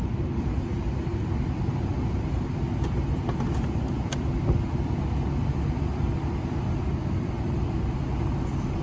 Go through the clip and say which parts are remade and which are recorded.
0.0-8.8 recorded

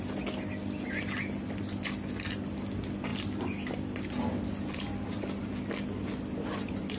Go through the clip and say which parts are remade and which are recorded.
0.0-7.0 recorded

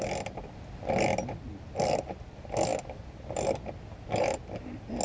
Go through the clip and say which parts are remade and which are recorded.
0.0-5.0 recorded

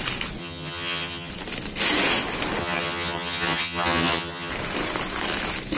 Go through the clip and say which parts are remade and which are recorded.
0.0-0.4 recorded; 0.4-1.3 remade; 1.3-2.6 recorded; 2.6-4.5 remade; 4.5-5.8 recorded

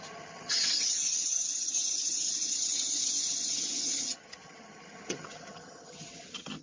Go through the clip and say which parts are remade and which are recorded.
0.0-6.6 remade

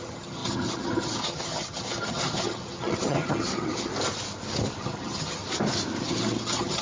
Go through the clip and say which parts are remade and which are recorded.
0.0-3.9 remade; 3.9-4.8 recorded; 4.8-5.4 remade; 5.4-6.0 recorded; 6.0-6.8 remade

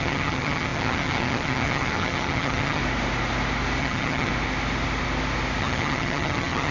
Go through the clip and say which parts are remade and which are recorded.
0.0-2.8 remade; 2.8-3.8 recorded; 3.8-4.3 remade; 4.3-5.6 recorded; 5.6-6.7 remade

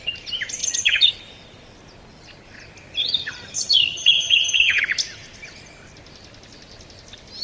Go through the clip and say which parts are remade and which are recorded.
0.0-0.6 recorded; 0.6-1.1 remade; 1.1-3.0 recorded; 3.0-4.8 remade; 4.8-7.4 recorded